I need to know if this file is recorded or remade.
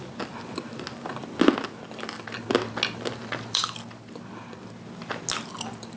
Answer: recorded